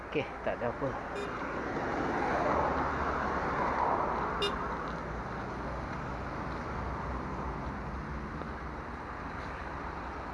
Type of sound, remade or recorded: recorded